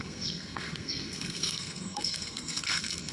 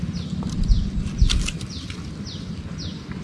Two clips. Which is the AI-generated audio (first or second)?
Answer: first